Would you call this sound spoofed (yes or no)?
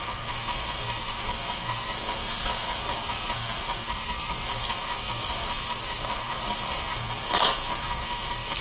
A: yes